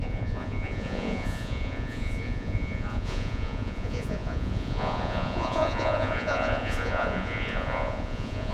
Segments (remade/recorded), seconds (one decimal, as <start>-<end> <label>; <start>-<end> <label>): 0.0-8.5 remade